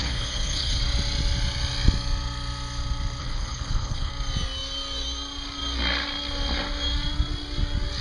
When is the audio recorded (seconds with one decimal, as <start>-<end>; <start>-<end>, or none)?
0.8-3.2; 4.1-8.0